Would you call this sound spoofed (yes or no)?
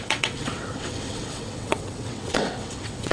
yes